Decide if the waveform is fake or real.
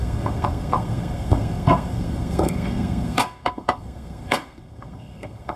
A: fake